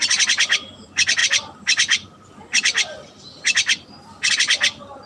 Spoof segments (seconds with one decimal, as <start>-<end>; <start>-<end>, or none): 1.2-4.3